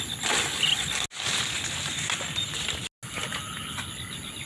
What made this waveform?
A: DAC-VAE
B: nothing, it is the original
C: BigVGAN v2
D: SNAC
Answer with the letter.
B